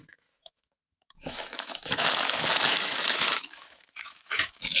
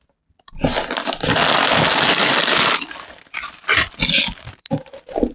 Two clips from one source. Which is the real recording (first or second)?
second